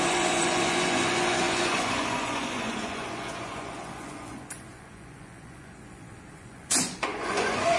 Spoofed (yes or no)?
yes